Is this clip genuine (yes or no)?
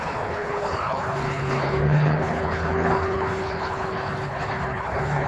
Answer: no